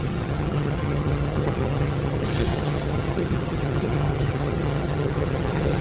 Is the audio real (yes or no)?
no